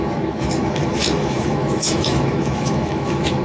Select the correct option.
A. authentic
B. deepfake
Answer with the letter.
B